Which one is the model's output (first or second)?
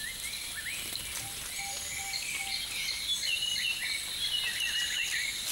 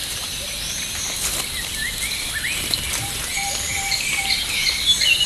second